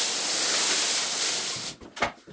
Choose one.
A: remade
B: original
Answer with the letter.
B